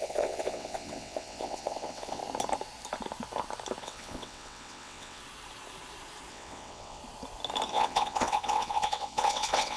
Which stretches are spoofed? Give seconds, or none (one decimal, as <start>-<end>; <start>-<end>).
0.0-2.2; 3.8-5.2; 6.3-7.0; 7.7-9.8